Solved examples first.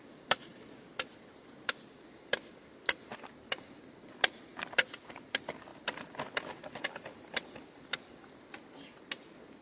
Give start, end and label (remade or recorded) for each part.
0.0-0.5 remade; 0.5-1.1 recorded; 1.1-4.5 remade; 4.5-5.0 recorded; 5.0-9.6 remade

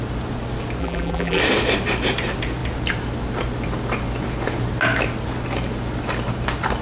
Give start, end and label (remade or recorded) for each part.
0.0-0.8 recorded; 0.8-1.4 remade; 1.4-6.8 recorded

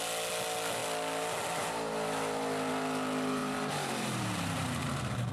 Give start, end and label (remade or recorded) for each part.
0.0-3.4 recorded; 3.4-5.3 remade